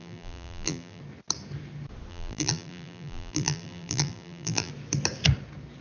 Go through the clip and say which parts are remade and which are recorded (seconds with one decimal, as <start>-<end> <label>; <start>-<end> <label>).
0.0-1.0 remade; 1.0-2.1 recorded; 2.1-4.7 remade; 4.7-5.8 recorded

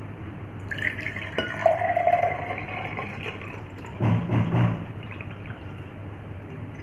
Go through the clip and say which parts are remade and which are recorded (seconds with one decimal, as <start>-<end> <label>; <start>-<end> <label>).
0.0-1.6 remade; 1.6-2.2 recorded; 2.2-6.8 remade

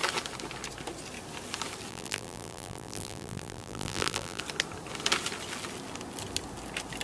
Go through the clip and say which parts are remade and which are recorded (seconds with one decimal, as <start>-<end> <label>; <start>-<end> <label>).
0.0-1.9 recorded; 1.9-4.4 remade; 4.4-7.0 recorded

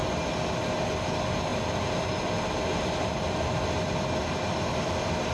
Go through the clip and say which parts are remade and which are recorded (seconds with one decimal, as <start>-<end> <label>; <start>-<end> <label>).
0.0-5.3 recorded